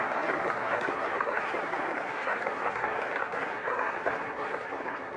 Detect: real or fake fake